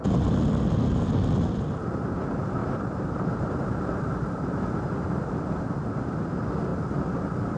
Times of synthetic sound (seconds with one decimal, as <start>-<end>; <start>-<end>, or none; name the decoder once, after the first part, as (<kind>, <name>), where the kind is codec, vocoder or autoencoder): 2.6-5.6 (vocoder, BigVGAN v2); 6.7-7.6